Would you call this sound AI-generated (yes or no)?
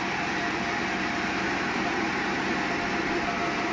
no